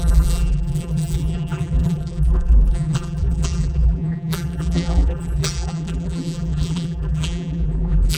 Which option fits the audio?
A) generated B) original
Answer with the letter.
A